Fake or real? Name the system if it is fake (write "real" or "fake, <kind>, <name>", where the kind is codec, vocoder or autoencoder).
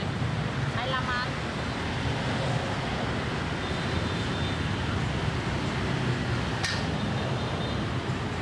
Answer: real